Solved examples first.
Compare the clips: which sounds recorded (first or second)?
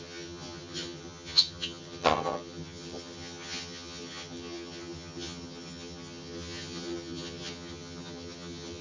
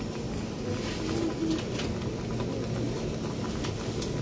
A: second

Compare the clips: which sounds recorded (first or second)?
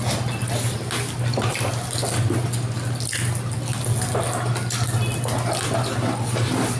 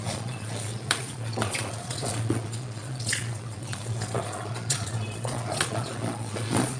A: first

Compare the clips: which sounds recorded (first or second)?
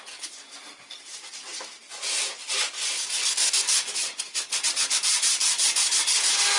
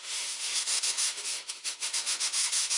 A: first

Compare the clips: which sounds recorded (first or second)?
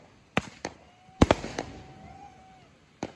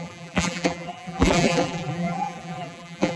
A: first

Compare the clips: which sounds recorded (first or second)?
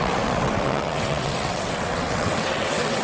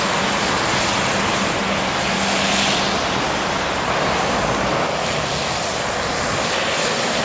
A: second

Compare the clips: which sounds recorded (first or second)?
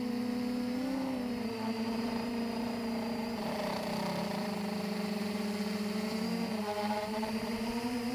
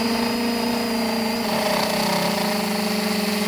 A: second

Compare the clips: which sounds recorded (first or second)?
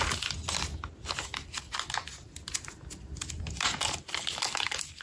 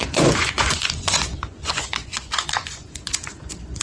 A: first